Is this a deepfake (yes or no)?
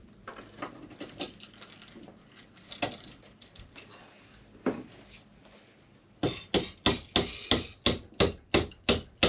no